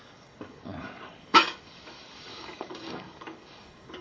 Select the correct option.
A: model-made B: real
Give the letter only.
A